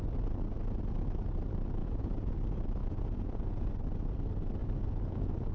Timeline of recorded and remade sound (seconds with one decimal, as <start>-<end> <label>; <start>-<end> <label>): 0.0-1.8 recorded; 1.8-2.3 remade; 2.3-2.8 recorded; 2.8-3.7 remade; 3.7-4.6 recorded; 4.6-5.5 remade